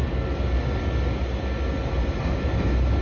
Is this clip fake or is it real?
real